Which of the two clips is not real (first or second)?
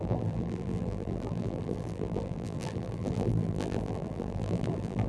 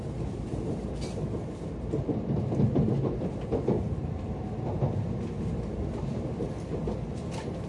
first